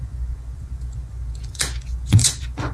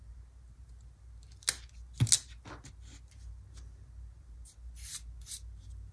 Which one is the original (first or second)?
second